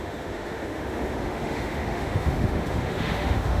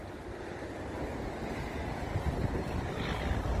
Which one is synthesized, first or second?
first